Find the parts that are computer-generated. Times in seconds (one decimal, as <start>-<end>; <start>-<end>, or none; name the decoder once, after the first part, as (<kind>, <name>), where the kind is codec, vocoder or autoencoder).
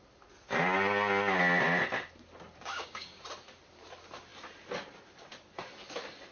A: 2.7-3.2 (codec, DAC)